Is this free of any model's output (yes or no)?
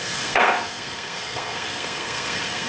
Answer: no